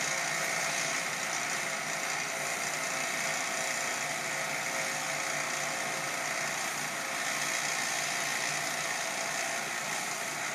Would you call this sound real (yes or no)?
yes